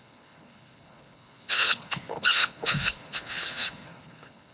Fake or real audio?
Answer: fake